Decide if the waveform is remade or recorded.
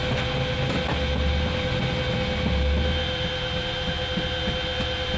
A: recorded